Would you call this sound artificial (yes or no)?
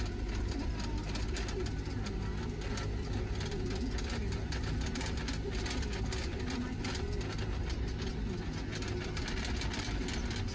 no